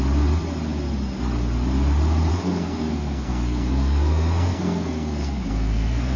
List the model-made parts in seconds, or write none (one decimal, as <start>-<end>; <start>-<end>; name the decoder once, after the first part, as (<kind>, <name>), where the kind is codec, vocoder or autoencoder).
2.3-6.2 (codec, SNAC)